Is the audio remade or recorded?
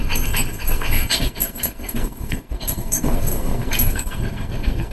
remade